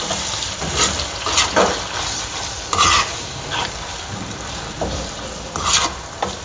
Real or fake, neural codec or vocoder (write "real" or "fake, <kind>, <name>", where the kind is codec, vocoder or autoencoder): fake, vocoder, BigVGAN v2